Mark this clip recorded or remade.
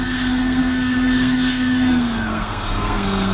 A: remade